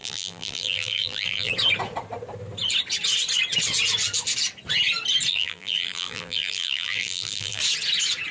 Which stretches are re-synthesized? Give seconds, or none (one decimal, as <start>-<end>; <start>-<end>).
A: 0.0-1.5; 5.3-7.6